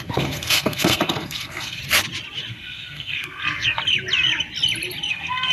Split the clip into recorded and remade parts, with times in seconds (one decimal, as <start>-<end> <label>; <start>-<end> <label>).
0.0-1.8 remade; 1.8-2.5 recorded; 2.5-3.8 remade; 3.8-5.1 recorded; 5.1-5.5 remade